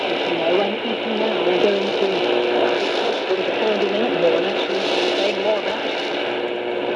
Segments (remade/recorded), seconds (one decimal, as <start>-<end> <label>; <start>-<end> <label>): 0.0-7.0 recorded